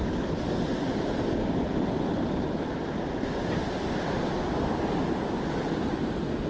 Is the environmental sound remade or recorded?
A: recorded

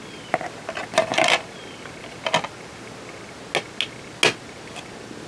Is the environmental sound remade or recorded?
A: recorded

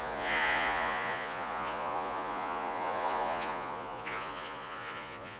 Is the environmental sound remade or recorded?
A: remade